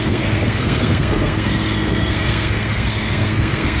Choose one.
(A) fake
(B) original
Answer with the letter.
A